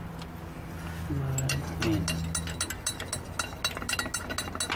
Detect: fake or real real